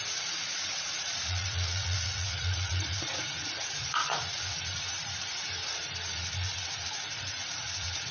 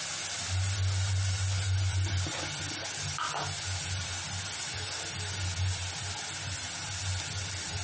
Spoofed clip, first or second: first